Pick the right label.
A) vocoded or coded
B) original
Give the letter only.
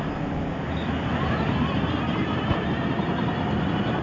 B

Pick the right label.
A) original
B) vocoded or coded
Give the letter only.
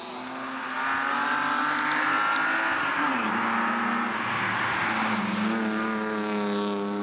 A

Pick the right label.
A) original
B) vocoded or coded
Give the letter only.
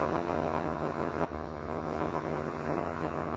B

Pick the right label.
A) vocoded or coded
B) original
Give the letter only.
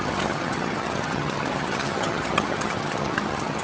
A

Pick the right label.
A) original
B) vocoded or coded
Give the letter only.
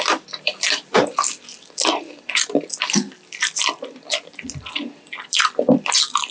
A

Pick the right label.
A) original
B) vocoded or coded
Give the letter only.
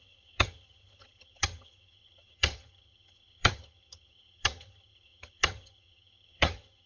B